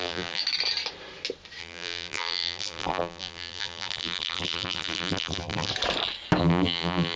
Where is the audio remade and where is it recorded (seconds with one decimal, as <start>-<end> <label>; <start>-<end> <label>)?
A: 0.0-0.4 remade; 0.4-1.6 recorded; 1.6-5.7 remade; 5.7-6.4 recorded; 6.4-7.2 remade